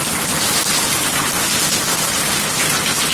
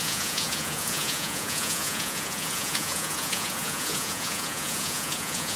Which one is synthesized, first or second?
second